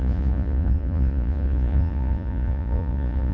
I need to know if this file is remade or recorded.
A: remade